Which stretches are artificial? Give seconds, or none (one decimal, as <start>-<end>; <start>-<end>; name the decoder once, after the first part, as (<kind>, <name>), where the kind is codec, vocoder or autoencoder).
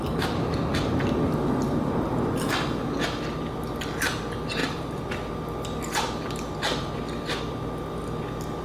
4.6-5.1 (vocoder, BigVGAN v2)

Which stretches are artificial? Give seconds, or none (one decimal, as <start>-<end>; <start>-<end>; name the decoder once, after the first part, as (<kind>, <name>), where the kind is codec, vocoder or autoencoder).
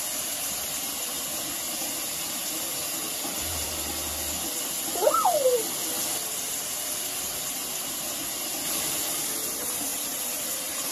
0.0-3.7 (vocoder, BigVGAN v2); 7.2-10.9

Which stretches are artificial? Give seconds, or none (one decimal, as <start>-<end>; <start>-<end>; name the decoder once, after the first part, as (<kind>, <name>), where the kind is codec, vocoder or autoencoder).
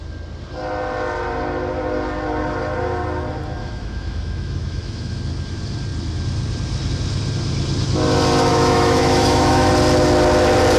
3.6-5.2 (autoencoder, DAC-VAE); 8.5-9.7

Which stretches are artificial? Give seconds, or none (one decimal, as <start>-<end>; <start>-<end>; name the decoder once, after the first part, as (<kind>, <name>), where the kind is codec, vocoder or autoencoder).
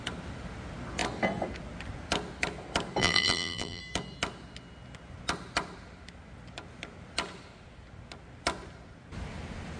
3.0-3.8 (vocoder, BigVGAN v2)